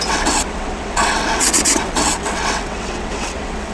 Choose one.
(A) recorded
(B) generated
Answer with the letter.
B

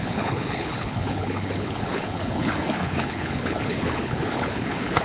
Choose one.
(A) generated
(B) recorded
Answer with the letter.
A